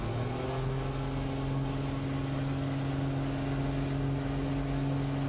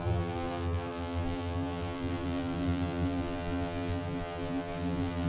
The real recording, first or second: first